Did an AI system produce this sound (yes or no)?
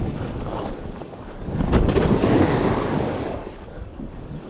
yes